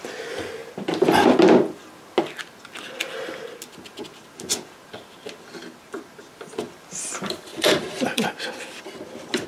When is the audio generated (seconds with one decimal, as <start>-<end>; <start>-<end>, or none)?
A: 7.5-8.3